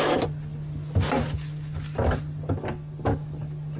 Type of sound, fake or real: real